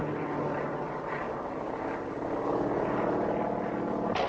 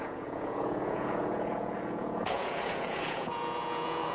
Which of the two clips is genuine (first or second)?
first